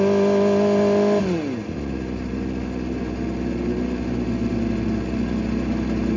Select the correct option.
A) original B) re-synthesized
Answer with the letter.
A